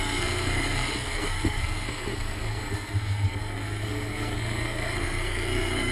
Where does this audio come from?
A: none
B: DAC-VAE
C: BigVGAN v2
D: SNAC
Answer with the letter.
D